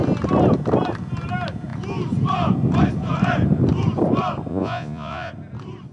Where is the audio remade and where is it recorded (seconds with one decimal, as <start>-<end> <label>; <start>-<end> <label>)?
0.0-4.5 recorded; 4.5-5.3 remade; 5.3-5.9 recorded